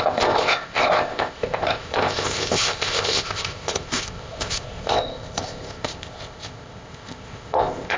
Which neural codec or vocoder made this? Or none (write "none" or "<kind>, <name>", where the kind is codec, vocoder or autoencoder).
codec, ZipCodec